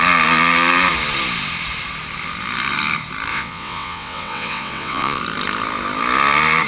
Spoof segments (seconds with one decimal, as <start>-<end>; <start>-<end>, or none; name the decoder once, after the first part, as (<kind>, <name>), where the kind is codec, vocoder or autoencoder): 3.3-5.2 (vocoder, WaveNeXt)